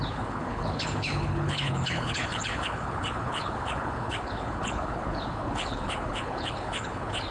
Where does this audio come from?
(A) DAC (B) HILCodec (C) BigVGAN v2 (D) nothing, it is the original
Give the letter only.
B